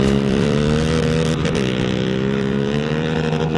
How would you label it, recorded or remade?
remade